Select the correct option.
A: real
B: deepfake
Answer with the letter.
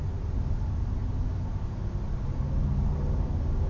A